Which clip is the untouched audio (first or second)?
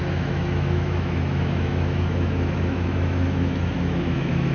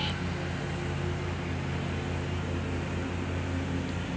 second